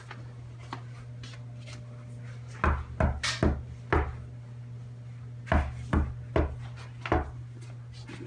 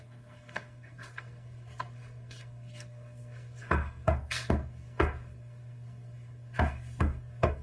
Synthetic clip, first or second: second